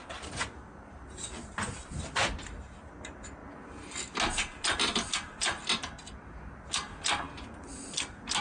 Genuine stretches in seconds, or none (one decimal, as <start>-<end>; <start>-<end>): 0.0-8.4